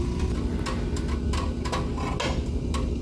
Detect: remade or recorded recorded